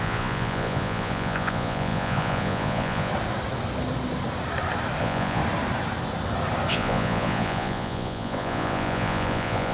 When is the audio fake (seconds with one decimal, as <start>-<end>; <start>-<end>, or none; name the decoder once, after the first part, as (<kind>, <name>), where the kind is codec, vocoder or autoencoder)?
0.0-3.1 (vocoder, Vocos); 5.0-5.4; 6.7-9.7